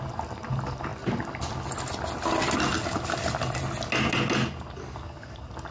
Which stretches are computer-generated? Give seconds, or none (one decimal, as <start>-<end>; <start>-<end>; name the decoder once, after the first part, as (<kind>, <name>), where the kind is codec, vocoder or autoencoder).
none